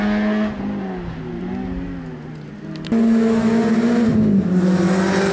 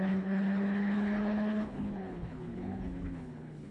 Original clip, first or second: first